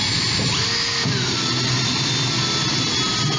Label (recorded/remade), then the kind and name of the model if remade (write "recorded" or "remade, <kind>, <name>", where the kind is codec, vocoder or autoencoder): recorded